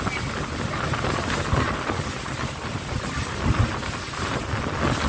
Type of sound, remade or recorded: recorded